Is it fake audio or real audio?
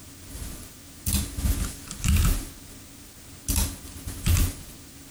real